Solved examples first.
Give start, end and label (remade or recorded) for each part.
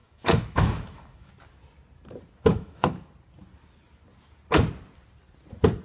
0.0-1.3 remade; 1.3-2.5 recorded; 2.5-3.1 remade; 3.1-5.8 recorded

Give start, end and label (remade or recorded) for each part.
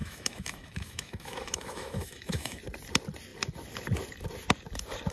0.0-2.6 remade; 2.6-5.1 recorded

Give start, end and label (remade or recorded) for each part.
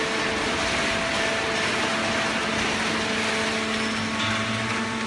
0.0-5.1 recorded